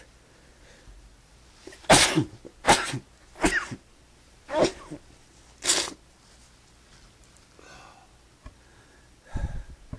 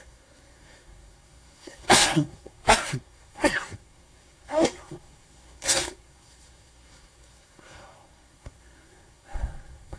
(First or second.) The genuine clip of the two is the first